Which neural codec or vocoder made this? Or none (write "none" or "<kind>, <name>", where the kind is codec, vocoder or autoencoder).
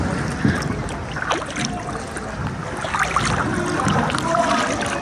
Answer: none